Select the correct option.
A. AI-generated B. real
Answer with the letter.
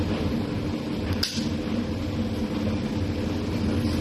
B